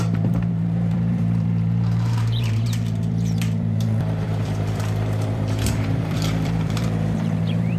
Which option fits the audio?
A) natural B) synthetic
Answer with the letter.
B